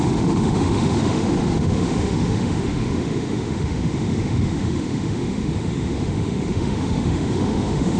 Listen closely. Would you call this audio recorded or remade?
remade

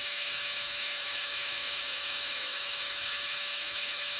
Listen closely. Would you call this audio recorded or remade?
remade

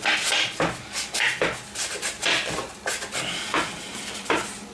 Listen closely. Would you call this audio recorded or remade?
recorded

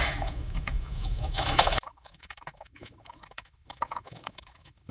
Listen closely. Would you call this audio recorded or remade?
remade